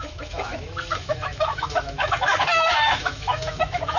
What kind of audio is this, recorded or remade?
remade